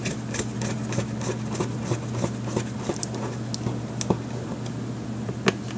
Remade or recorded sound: recorded